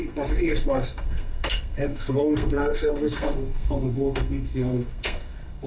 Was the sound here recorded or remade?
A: remade